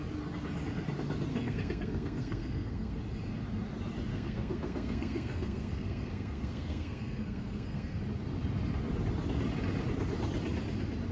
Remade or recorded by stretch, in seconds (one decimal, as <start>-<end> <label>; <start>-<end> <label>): 0.0-1.3 recorded; 1.3-3.0 remade; 3.0-4.1 recorded; 4.1-8.0 remade; 8.0-11.1 recorded